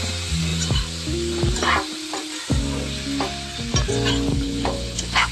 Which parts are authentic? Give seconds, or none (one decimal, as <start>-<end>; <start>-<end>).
0.0-4.3